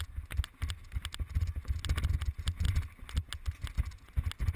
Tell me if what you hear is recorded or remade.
recorded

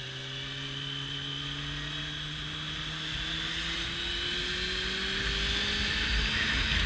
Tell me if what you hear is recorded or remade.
recorded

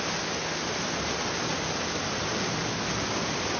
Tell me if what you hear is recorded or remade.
recorded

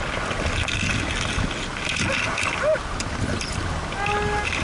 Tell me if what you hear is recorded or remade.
recorded